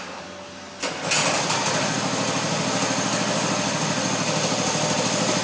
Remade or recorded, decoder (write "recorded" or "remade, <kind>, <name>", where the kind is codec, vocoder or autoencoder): recorded